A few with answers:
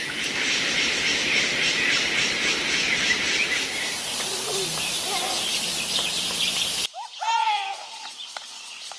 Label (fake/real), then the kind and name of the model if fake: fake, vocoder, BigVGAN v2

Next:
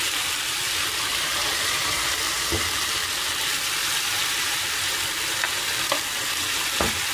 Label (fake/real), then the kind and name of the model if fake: fake, vocoder, BigVGAN v2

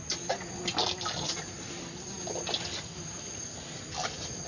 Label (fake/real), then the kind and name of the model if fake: real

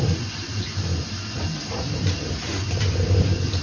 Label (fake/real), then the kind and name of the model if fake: fake, vocoder, BigVGAN v2